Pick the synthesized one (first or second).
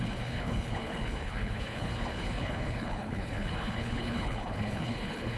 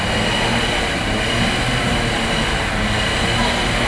first